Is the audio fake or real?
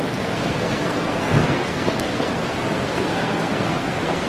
fake